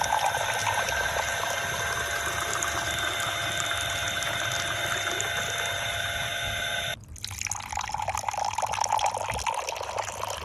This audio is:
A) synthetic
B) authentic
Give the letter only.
B